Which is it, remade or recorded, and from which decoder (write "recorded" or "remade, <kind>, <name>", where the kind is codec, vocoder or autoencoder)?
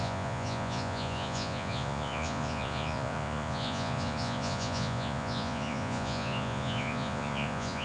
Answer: remade, vocoder, Vocos